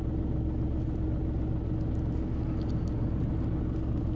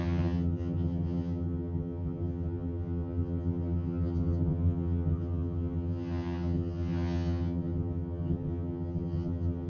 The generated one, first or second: second